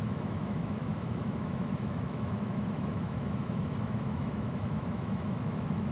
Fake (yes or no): yes